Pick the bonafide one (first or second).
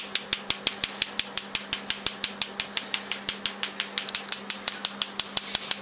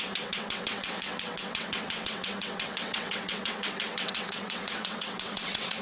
first